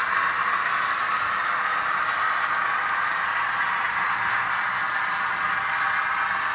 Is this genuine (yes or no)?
yes